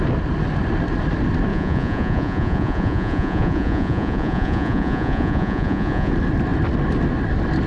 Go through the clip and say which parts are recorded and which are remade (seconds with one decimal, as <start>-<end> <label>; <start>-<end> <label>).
0.0-1.5 recorded; 1.5-6.1 remade; 6.1-7.7 recorded